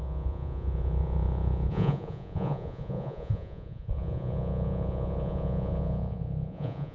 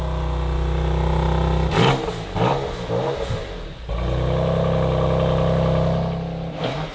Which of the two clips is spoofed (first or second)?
first